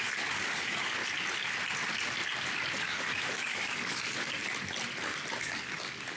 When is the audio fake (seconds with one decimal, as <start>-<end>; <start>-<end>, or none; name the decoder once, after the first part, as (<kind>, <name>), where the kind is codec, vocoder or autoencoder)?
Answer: 0.0-1.0 (codec, DAC); 2.8-4.4; 5.4-6.2